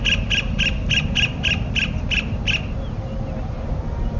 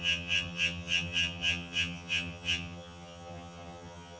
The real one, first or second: first